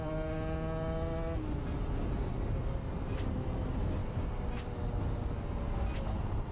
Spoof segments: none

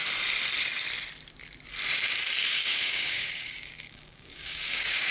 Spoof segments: 2.4-5.1 (codec, DAC)

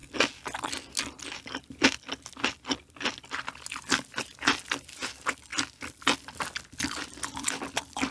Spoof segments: none